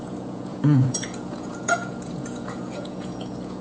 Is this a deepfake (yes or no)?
yes